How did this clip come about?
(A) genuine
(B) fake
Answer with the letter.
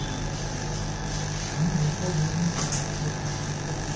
A